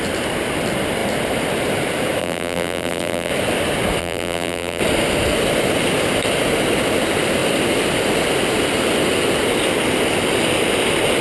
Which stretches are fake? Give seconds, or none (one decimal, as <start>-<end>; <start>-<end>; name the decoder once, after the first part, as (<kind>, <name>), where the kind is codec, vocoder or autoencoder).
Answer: 2.2-3.3 (vocoder, BigVGAN v2); 4.0-4.8